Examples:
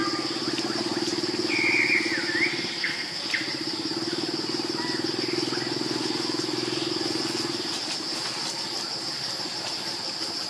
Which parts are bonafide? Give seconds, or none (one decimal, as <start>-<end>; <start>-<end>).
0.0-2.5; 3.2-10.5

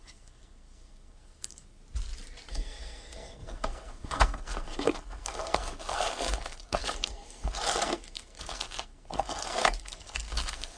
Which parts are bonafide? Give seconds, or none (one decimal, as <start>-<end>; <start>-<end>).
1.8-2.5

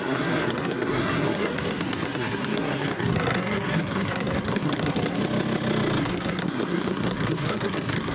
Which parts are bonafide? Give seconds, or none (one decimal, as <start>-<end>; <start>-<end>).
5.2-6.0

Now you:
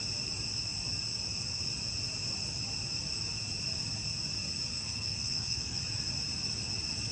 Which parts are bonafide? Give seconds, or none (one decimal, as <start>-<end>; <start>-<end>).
0.0-4.7; 5.8-7.1

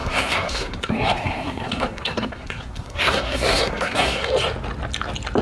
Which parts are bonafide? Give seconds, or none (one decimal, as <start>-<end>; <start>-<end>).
4.3-5.4

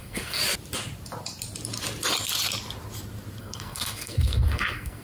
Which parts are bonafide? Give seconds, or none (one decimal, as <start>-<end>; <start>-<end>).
0.4-3.4